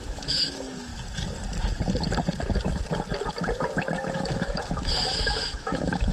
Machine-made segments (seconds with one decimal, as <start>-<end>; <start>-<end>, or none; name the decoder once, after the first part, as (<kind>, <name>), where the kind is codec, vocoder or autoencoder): 0.0-0.9 (autoencoder, DAC-VAE); 4.1-6.1